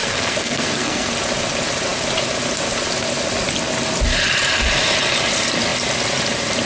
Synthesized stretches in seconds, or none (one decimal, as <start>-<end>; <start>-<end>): 0.0-1.1